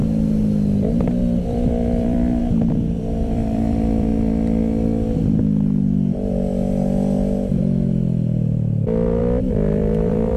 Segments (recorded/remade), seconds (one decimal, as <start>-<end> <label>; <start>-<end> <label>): 0.0-1.2 recorded; 1.2-2.4 remade; 2.4-3.0 recorded; 3.0-4.1 remade; 4.1-9.2 recorded; 9.2-10.4 remade